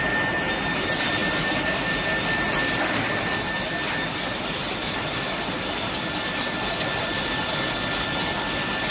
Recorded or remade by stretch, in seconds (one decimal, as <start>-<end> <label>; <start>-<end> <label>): 0.0-8.9 recorded